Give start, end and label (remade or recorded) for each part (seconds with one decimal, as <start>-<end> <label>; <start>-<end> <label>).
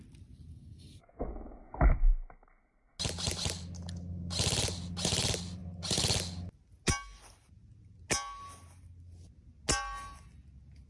0.0-0.5 recorded; 0.5-1.3 remade; 1.3-10.9 recorded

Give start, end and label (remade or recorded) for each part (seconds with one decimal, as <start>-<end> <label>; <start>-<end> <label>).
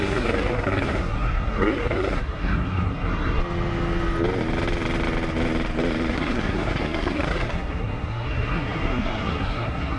0.0-3.4 remade; 3.4-6.1 recorded; 6.1-10.0 remade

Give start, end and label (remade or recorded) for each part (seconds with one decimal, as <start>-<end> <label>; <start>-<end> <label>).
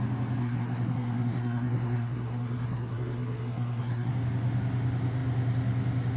0.0-0.4 recorded; 0.4-4.1 remade; 4.1-6.2 recorded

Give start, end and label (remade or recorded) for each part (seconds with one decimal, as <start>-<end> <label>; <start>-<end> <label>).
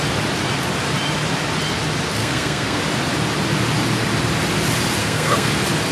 0.0-2.2 recorded; 2.2-2.8 remade; 2.8-5.0 recorded; 5.0-5.5 remade; 5.5-5.9 recorded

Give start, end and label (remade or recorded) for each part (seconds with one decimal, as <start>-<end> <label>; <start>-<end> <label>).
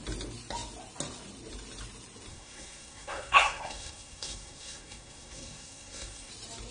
0.0-2.3 recorded; 2.3-6.3 remade; 6.3-6.7 recorded